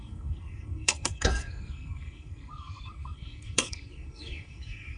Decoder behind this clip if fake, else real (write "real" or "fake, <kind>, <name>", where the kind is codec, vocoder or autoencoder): fake, codec, SNAC